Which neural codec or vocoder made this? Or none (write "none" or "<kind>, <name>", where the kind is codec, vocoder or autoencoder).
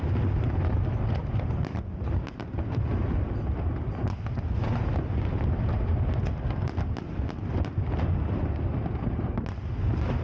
none